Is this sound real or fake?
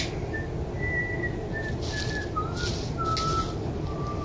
real